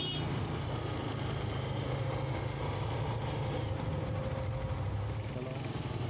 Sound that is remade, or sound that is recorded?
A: recorded